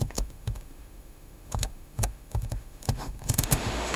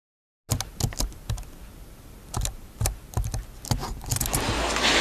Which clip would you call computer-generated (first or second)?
first